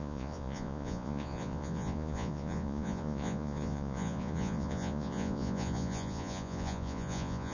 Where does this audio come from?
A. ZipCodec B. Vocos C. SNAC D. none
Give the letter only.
B